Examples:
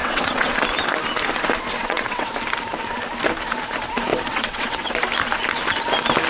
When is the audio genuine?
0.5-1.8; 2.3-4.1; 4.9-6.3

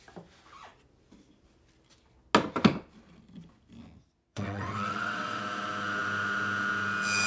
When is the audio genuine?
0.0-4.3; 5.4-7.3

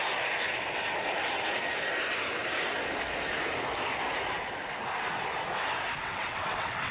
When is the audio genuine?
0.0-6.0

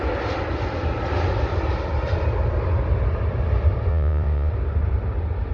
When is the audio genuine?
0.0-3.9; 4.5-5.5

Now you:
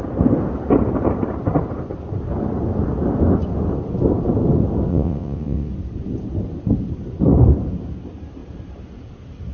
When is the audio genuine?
0.0-4.9; 5.7-9.5